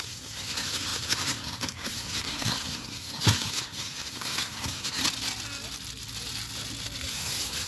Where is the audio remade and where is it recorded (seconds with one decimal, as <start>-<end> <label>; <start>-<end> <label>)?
0.0-5.0 remade; 5.0-7.1 recorded; 7.1-7.7 remade

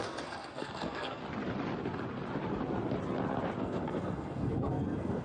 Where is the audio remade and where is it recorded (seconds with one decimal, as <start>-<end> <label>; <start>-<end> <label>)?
0.0-1.2 remade; 1.2-3.6 recorded; 3.6-5.2 remade

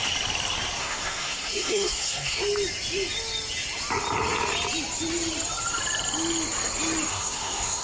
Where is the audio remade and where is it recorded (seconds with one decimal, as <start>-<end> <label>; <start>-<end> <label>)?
0.0-0.8 recorded; 0.8-2.4 remade; 2.4-7.1 recorded; 7.1-7.8 remade

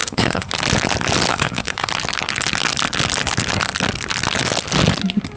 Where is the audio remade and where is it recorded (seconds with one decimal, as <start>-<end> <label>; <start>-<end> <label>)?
0.0-0.5 remade; 0.5-1.3 recorded; 1.3-1.9 remade; 1.9-5.4 recorded

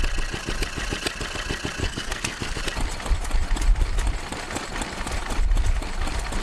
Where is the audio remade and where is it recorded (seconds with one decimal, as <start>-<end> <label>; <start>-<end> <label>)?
0.0-1.8 recorded; 1.8-2.6 remade; 2.6-6.4 recorded

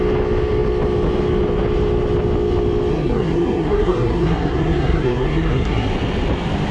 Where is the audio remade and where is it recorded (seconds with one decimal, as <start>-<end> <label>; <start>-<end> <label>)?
0.0-2.9 recorded; 2.9-5.9 remade; 5.9-6.7 recorded

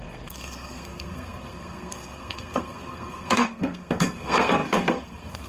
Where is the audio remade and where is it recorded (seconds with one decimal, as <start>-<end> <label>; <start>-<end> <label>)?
0.0-5.5 remade

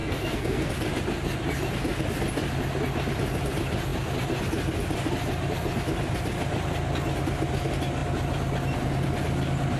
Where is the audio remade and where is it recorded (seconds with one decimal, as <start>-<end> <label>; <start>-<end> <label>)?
0.0-0.7 remade; 0.7-9.8 recorded